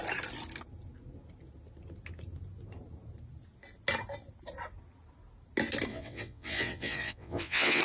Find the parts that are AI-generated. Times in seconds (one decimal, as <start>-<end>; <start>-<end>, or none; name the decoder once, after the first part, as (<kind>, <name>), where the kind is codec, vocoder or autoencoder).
5.9-7.8 (vocoder, WaveNeXt)